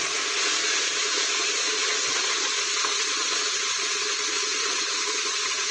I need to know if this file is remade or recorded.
remade